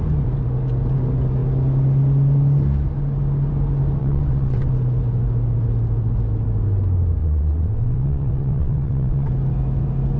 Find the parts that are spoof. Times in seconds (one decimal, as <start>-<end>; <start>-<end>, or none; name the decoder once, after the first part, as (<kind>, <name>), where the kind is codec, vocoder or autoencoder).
4.0-4.7 (vocoder, WaveNeXt); 7.2-9.3